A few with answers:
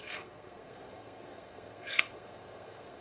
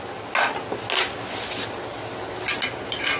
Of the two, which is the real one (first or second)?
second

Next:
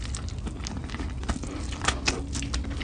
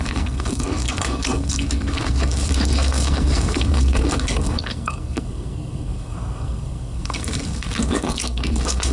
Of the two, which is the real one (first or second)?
first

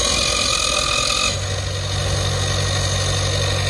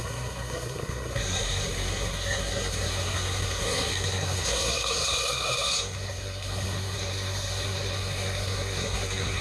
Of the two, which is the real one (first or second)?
first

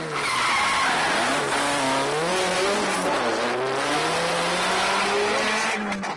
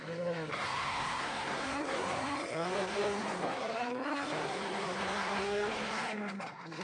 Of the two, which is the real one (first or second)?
first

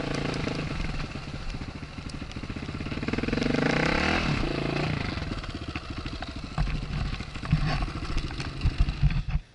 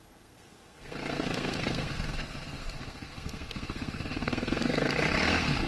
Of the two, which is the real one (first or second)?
first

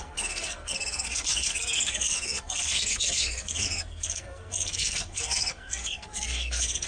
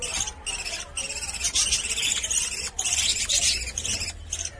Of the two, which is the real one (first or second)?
second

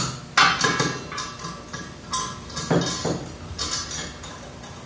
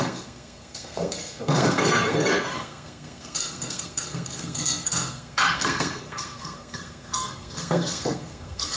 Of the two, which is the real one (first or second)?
first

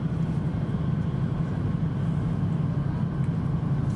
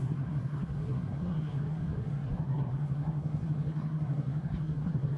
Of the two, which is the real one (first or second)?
first